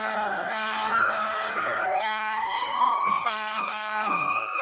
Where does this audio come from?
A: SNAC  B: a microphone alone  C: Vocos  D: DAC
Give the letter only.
A